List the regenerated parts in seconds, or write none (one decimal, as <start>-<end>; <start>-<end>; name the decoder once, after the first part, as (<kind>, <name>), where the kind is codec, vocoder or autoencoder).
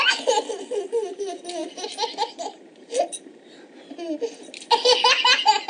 none